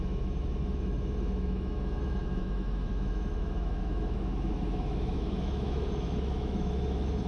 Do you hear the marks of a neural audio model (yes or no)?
yes